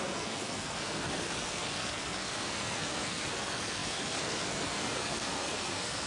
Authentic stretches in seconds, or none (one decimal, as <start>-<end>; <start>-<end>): none